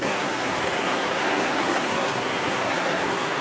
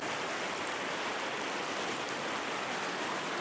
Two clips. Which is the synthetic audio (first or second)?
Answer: first